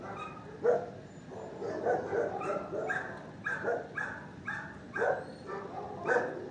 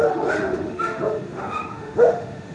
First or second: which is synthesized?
second